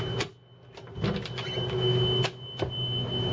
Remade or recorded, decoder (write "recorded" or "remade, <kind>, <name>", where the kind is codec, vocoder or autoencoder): recorded